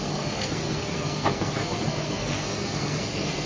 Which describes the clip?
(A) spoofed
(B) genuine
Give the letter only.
A